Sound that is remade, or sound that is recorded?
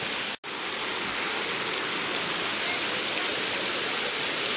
recorded